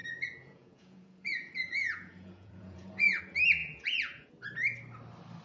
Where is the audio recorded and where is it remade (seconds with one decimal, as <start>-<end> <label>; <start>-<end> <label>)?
0.0-3.2 remade; 3.2-3.6 recorded; 3.6-4.3 remade; 4.3-5.4 recorded